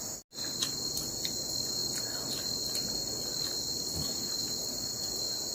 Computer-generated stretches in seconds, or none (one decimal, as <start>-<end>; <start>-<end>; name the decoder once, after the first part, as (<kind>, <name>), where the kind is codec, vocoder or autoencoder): none